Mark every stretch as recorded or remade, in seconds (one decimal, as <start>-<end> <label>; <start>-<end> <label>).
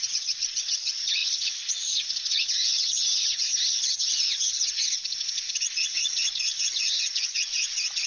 0.0-8.1 remade